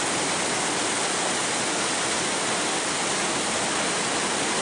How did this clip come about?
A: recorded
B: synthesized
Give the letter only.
A